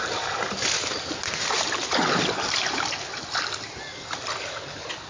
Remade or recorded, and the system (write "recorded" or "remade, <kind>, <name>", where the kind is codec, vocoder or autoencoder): recorded